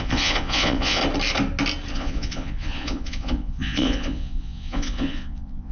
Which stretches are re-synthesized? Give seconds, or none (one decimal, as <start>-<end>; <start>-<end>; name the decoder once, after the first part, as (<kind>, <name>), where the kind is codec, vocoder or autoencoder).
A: 0.0-1.0 (vocoder, Vocos); 1.9-5.7